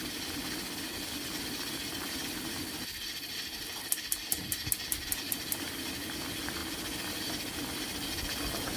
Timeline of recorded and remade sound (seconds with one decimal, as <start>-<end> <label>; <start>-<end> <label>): 0.0-8.8 recorded